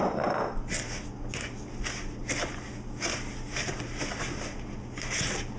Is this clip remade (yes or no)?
no